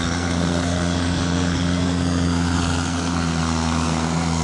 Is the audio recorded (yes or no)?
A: no